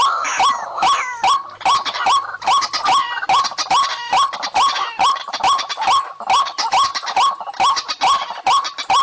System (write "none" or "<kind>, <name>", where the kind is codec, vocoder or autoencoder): none